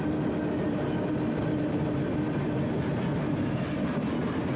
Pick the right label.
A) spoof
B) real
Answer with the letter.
B